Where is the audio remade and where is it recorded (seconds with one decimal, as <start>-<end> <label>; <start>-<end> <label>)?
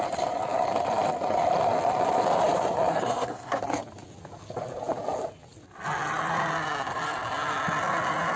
0.0-2.9 recorded; 2.9-3.6 remade; 3.6-8.4 recorded